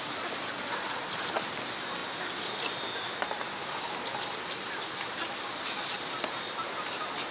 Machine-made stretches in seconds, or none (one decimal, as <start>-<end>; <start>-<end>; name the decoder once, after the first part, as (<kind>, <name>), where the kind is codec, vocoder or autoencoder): 0.0-2.0 (vocoder, BigVGAN v2); 6.0-7.3